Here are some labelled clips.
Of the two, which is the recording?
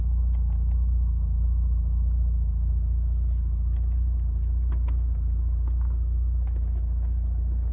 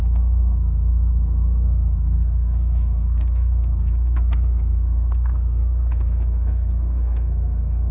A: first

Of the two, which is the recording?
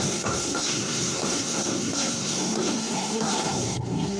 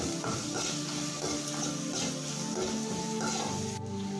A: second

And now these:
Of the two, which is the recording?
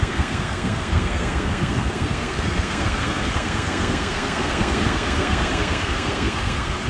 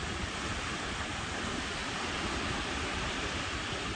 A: second